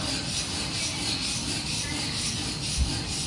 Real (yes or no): yes